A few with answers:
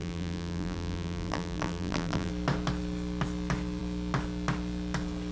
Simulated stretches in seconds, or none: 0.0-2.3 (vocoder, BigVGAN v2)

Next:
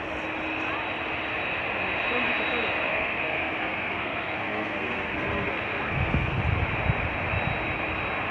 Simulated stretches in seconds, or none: 2.9-6.4 (codec, SNAC)

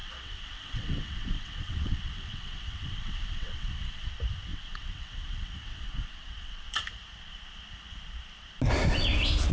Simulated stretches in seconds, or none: 0.0-4.1 (vocoder, WaveNeXt); 4.5-6.6

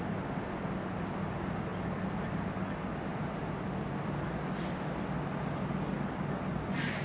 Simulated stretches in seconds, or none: none

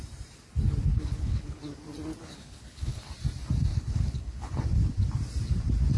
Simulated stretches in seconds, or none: 0.9-1.6 (codec, HILCodec); 2.2-3.0; 3.7-4.5

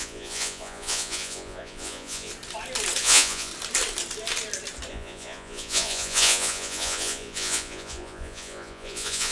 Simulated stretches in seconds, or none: 0.0-2.3 (vocoder, Vocos); 3.0-3.5; 4.9-9.3

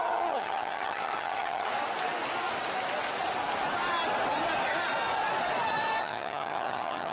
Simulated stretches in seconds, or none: 0.0-1.7 (vocoder, HiFi-GAN); 6.0-7.1

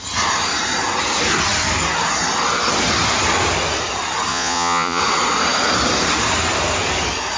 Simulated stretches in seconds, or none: 4.3-5.0 (vocoder, Vocos)